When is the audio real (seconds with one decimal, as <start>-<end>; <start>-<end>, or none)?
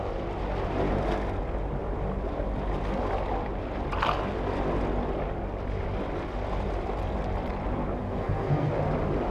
0.0-8.0; 8.7-9.3